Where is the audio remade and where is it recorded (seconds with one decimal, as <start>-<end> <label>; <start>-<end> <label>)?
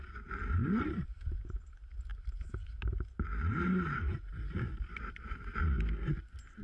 0.0-0.6 recorded; 0.6-1.4 remade; 1.4-2.1 recorded; 2.1-2.8 remade; 2.8-4.3 recorded; 4.3-5.6 remade; 5.6-6.6 recorded